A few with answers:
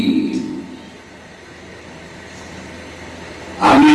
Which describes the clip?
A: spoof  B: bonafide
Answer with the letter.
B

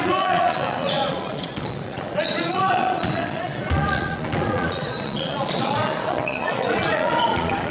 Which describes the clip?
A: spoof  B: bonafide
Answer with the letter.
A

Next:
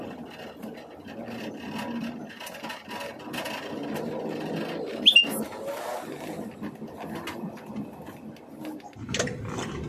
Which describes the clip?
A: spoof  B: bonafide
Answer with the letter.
B